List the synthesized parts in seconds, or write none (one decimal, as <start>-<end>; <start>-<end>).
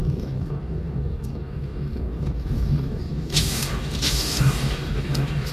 0.0-5.5